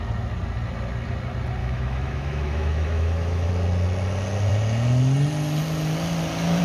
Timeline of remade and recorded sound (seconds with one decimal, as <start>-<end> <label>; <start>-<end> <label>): 0.0-1.6 recorded; 1.6-3.5 remade; 3.5-6.6 recorded